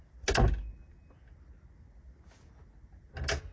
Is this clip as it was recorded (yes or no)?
yes